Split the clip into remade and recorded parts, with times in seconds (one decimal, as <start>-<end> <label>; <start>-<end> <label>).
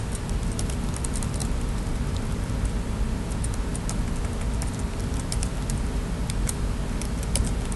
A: 0.0-7.8 recorded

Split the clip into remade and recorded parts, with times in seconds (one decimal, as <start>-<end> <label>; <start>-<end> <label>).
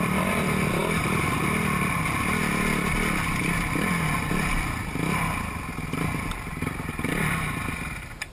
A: 0.0-8.3 recorded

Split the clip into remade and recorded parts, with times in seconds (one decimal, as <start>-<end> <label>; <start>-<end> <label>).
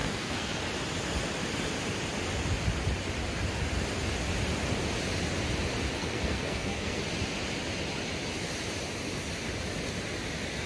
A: 0.0-0.6 remade; 0.6-6.0 recorded; 6.0-7.0 remade; 7.0-10.7 recorded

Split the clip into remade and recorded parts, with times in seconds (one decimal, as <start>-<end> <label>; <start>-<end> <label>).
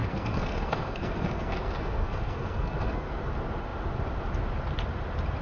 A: 0.0-3.2 remade; 3.2-5.4 recorded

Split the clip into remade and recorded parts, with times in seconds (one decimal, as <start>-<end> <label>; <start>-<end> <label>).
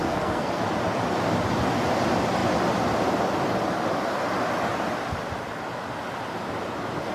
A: 0.0-0.6 remade; 0.6-7.1 recorded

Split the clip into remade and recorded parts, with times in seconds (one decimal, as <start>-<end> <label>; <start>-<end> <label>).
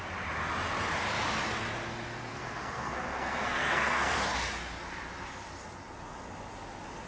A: 0.0-2.3 recorded; 2.3-4.2 remade; 4.2-7.1 recorded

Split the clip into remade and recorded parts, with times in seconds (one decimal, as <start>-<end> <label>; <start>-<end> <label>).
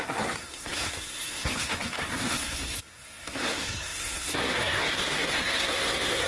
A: 0.0-6.3 remade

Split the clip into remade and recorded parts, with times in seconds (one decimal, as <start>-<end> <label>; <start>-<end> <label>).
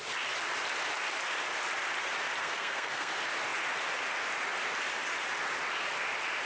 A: 0.0-2.4 recorded; 2.4-3.1 remade; 3.1-6.5 recorded